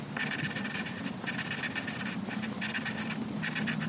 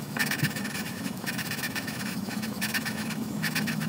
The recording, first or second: first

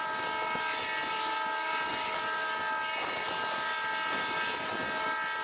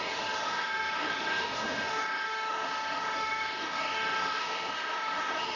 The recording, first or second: first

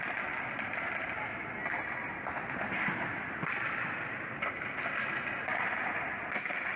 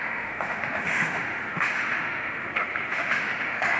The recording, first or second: first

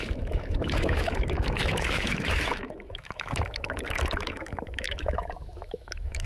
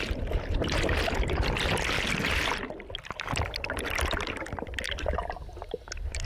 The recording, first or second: second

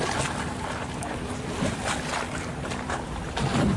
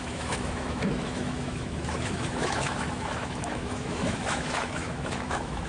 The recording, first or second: first